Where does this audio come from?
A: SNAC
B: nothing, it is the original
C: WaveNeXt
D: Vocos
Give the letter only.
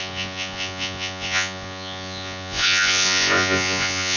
D